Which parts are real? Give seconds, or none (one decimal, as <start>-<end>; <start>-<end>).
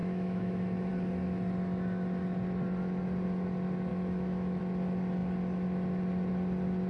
0.9-3.9; 4.6-6.9